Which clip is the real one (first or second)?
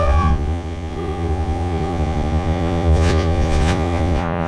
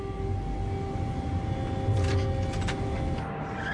second